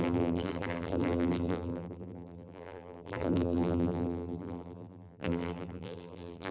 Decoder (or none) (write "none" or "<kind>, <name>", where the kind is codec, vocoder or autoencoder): vocoder, BigVGAN v2